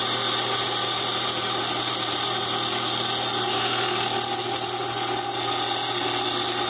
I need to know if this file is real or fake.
real